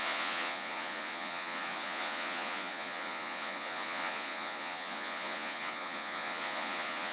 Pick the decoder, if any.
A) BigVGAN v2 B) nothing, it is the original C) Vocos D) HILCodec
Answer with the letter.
C